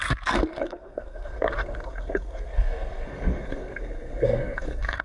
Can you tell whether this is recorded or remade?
remade